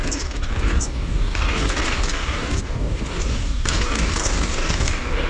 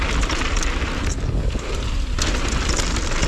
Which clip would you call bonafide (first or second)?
second